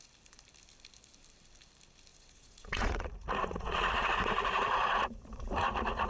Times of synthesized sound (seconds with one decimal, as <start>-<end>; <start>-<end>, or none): 2.1-6.1